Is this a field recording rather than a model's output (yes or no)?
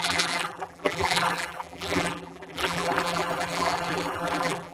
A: no